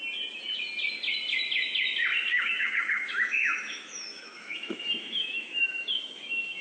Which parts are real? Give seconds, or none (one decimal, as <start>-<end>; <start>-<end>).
0.0-2.3

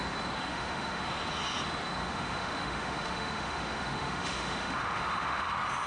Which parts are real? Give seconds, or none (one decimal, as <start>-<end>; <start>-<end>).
0.0-0.5; 1.0-2.0; 5.5-5.9